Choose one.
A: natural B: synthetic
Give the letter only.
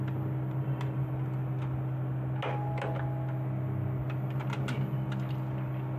A